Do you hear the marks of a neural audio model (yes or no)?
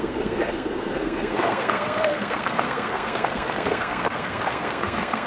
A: yes